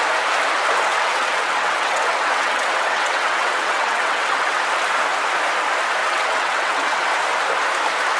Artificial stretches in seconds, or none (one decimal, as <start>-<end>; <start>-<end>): 0.9-4.6; 6.0-7.1